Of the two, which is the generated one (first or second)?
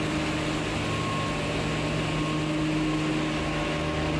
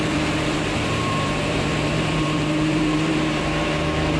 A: second